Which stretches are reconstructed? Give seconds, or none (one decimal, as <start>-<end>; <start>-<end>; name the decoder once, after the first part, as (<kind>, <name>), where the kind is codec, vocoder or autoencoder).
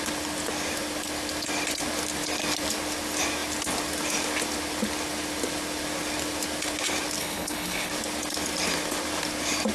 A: 7.2-7.9 (codec, HILCodec)